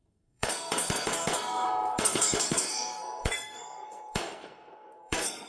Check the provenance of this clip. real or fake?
fake